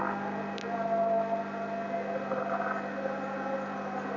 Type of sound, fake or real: real